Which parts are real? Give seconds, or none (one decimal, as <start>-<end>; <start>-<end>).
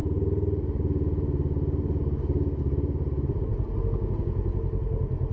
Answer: 0.0-5.3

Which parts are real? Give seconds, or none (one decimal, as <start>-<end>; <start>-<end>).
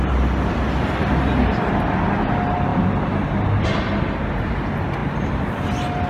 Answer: 0.0-6.1